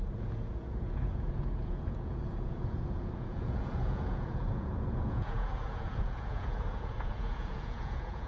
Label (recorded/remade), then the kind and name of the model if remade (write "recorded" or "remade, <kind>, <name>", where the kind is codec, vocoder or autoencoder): remade, vocoder, Vocos